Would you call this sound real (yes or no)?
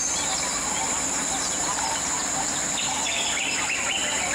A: yes